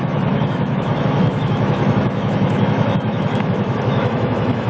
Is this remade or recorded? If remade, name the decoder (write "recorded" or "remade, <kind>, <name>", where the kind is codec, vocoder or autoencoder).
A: remade, autoencoder, DAC-VAE